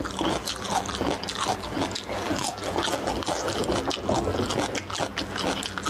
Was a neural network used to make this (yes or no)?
yes